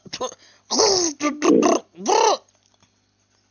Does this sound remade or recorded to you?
recorded